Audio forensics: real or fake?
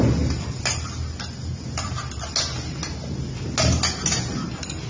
real